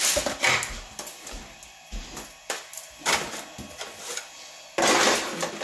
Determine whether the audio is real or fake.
real